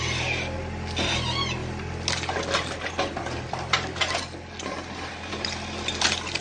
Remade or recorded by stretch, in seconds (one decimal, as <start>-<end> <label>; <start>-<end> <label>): 0.0-6.4 recorded